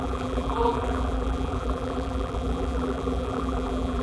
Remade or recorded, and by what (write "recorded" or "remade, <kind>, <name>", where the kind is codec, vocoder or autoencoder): remade, vocoder, BigVGAN v2